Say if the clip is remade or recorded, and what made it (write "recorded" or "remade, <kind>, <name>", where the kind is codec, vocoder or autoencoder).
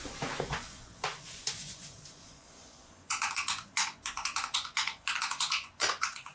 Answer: remade, vocoder, Vocos